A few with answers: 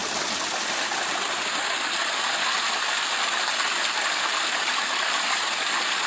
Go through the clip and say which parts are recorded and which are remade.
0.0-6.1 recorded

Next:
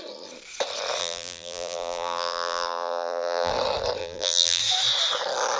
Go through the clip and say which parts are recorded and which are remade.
0.0-1.0 recorded; 1.0-3.5 remade; 3.5-4.0 recorded; 4.0-4.6 remade; 4.6-5.6 recorded

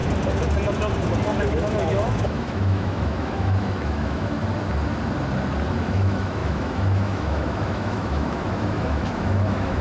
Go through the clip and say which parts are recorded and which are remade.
0.0-1.4 recorded; 1.4-4.4 remade; 4.4-5.7 recorded; 5.7-9.8 remade

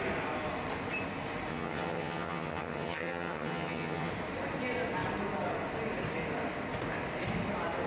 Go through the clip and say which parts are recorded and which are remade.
0.0-1.5 recorded; 1.5-4.1 remade; 4.1-7.9 recorded

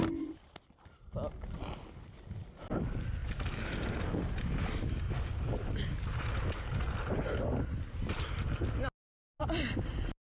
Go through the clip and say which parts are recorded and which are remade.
0.0-10.3 recorded